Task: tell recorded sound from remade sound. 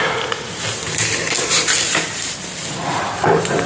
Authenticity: remade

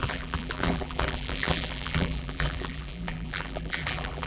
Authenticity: remade